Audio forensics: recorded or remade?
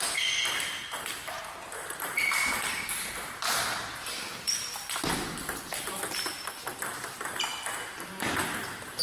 recorded